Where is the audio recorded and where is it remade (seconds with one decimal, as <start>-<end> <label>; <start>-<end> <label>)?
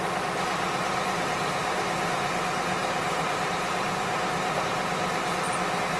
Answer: 0.0-2.8 recorded; 2.8-4.7 remade; 4.7-6.0 recorded